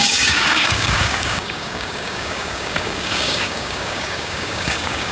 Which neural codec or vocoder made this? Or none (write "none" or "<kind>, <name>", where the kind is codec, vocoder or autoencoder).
codec, DAC